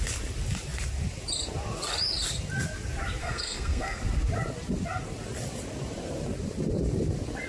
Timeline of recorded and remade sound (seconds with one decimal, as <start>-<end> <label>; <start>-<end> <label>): 0.0-3.2 recorded; 3.2-4.0 remade; 4.0-7.5 recorded